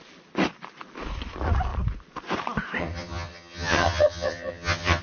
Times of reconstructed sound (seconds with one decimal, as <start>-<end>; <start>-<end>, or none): 2.8-5.0